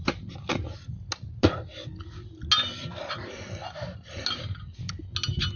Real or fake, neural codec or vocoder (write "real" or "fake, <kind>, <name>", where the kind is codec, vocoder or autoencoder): real